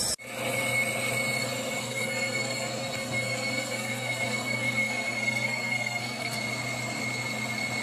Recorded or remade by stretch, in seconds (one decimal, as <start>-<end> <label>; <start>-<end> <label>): 0.0-1.8 recorded; 1.8-6.4 remade; 6.4-7.8 recorded